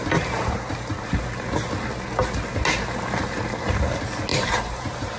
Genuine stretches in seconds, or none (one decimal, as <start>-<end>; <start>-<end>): 0.9-4.3